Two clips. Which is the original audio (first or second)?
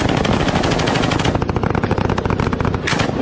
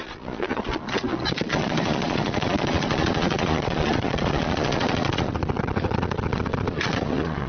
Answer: first